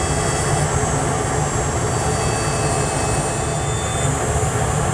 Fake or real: real